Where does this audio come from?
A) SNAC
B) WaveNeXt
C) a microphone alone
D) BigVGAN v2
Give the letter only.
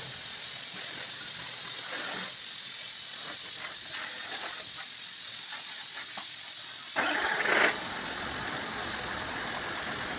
C